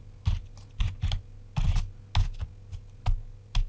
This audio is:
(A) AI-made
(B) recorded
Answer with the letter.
B